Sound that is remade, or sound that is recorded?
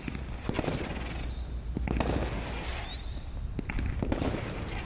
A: recorded